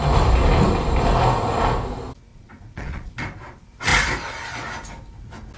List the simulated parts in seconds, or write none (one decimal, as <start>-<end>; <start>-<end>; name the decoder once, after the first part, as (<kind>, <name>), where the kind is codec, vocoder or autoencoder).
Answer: 2.3-3.1 (vocoder, Vocos)